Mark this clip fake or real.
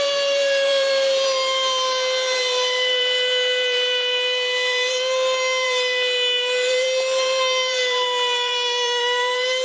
fake